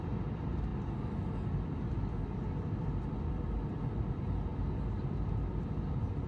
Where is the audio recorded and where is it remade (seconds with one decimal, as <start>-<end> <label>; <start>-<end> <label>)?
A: 0.0-6.3 recorded